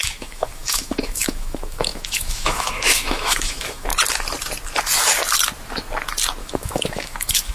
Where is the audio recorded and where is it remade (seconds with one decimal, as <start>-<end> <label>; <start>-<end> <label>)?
0.0-3.9 remade; 3.9-6.4 recorded; 6.4-7.5 remade